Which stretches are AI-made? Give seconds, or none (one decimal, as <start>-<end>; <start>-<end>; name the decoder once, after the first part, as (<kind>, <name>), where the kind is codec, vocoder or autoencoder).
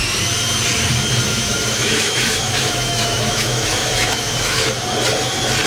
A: 1.3-4.7 (autoencoder, DAC-VAE)